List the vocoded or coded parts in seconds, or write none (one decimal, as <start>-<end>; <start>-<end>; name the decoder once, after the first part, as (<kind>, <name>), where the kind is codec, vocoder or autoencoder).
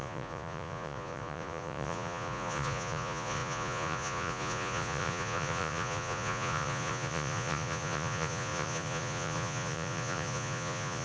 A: 0.0-11.0 (vocoder, Vocos)